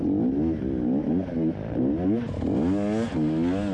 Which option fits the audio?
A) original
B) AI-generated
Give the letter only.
A